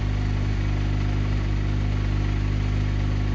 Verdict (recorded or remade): recorded